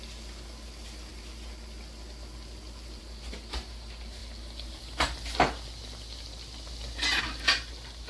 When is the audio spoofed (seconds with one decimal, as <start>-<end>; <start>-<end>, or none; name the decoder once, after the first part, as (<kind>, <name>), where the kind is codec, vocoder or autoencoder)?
none